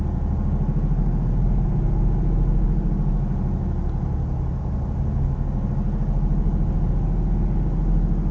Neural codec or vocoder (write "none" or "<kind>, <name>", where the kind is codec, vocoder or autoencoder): none